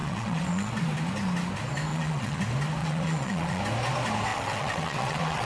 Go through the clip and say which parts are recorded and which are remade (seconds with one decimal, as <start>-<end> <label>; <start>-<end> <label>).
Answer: 0.0-0.7 remade; 0.7-1.9 recorded; 1.9-2.4 remade; 2.4-2.8 recorded; 2.8-3.6 remade; 3.6-4.3 recorded; 4.3-5.5 remade